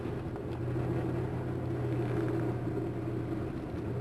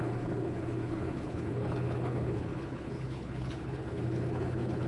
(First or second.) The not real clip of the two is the second